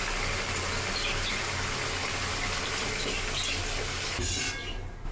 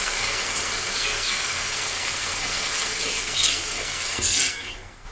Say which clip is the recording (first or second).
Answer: first